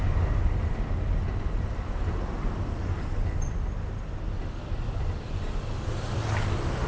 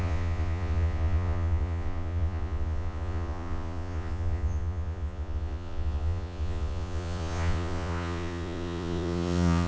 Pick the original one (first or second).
first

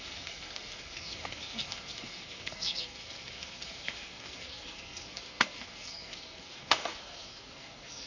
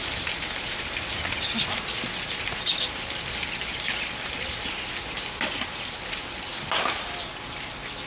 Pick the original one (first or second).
second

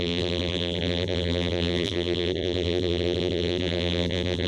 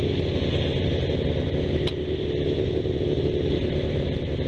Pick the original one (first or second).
second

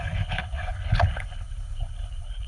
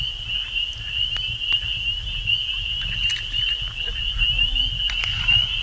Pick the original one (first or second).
second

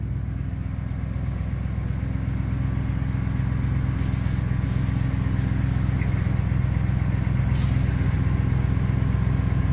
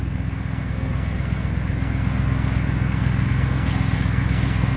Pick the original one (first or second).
first